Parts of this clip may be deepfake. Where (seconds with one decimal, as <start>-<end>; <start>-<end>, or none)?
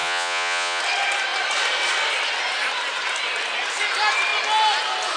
0.0-0.8